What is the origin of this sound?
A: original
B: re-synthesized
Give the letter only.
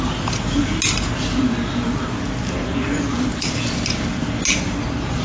A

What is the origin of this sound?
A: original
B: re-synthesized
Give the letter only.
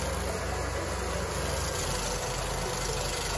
A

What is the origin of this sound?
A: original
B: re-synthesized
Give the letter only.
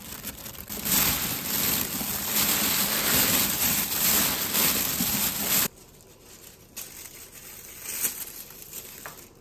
A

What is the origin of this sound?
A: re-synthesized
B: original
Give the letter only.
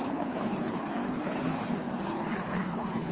A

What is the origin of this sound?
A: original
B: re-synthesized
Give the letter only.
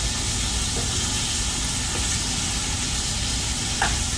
A